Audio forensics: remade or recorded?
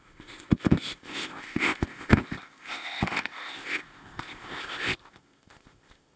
remade